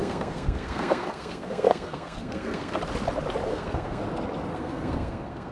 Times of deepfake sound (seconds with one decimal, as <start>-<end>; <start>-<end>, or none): 0.0-2.8; 3.5-4.0; 4.5-5.5